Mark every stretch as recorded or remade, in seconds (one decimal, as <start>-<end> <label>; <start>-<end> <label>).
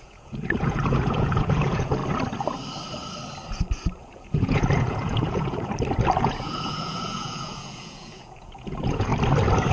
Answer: 0.0-2.0 remade; 2.0-4.0 recorded; 4.0-5.7 remade; 5.7-6.2 recorded; 6.2-9.1 remade; 9.1-9.7 recorded